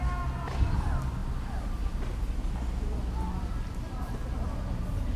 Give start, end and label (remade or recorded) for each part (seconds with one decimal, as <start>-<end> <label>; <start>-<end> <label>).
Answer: 0.0-1.2 recorded; 1.2-2.5 remade; 2.5-5.2 recorded